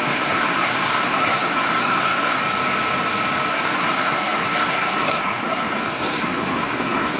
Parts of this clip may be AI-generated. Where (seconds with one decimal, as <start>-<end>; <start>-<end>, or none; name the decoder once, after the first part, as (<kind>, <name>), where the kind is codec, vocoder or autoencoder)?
0.0-2.4 (codec, SNAC); 3.5-7.2